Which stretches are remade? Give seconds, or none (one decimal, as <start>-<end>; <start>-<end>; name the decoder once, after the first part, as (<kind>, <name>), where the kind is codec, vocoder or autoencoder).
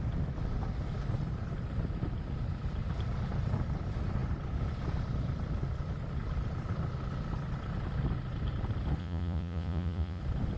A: 9.0-10.2 (vocoder, Vocos)